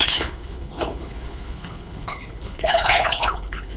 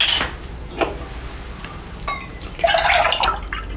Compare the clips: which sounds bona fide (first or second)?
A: second